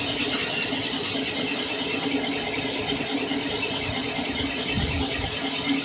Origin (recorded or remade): recorded